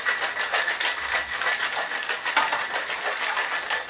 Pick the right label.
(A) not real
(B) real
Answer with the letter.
B